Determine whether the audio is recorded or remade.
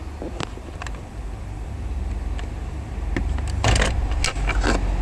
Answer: recorded